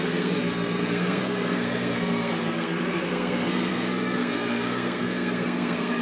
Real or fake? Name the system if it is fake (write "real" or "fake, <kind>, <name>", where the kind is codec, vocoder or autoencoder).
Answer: fake, codec, SNAC